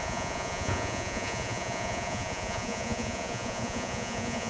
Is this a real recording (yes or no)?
no